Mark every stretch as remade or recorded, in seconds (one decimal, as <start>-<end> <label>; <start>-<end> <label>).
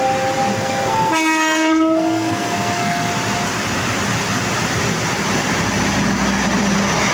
0.0-0.5 recorded; 0.5-3.1 remade; 3.1-7.1 recorded